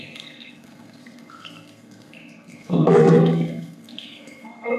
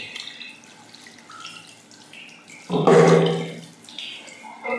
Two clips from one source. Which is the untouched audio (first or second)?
second